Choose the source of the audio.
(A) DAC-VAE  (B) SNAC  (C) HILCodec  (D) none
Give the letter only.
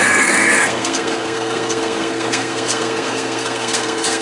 B